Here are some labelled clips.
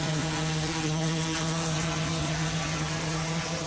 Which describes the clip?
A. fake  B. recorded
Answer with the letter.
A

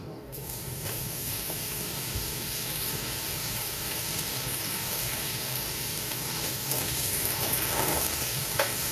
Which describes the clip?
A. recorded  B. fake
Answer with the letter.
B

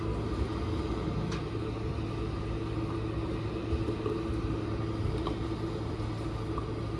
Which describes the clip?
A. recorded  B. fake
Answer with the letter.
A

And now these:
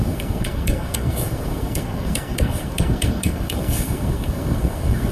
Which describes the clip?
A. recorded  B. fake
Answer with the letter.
B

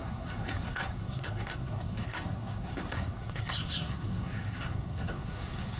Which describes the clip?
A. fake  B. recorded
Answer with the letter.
A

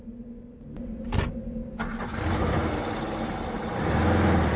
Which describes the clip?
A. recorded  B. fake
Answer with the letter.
A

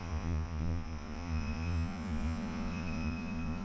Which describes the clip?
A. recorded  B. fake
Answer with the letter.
B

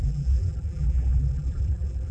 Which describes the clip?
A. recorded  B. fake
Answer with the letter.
B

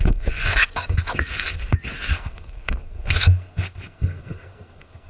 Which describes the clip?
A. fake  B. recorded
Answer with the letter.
A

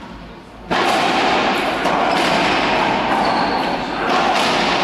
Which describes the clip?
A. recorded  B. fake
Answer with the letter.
A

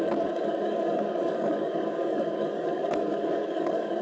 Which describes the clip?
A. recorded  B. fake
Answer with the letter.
B